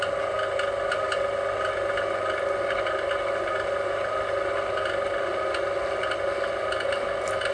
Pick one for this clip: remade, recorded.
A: recorded